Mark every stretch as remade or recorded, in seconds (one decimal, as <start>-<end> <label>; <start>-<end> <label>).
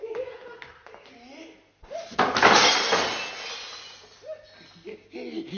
0.0-5.6 recorded